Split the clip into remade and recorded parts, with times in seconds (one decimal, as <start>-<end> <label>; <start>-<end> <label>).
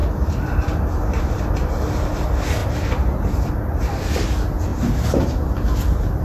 0.0-1.4 remade; 1.4-2.6 recorded; 2.6-3.5 remade; 3.5-4.7 recorded; 4.7-6.2 remade